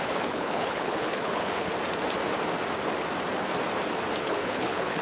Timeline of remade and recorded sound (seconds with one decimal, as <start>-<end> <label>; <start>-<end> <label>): 0.0-1.7 remade; 1.7-4.2 recorded; 4.2-5.0 remade